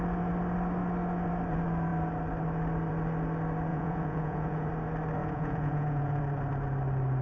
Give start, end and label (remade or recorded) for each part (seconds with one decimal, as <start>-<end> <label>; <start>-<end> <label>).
0.0-3.7 recorded; 3.7-4.7 remade; 4.7-5.2 recorded; 5.2-6.2 remade; 6.2-7.2 recorded